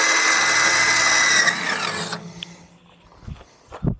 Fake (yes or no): no